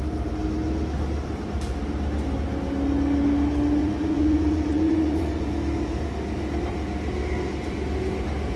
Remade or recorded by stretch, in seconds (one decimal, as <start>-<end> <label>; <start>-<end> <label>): 0.0-3.8 recorded; 3.8-5.5 remade; 5.5-8.6 recorded